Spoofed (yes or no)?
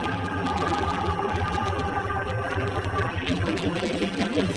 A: yes